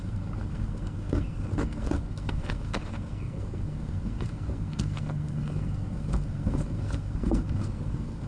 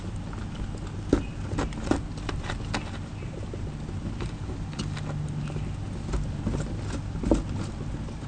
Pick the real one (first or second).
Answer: second